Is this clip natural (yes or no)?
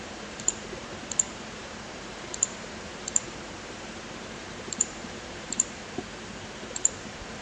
no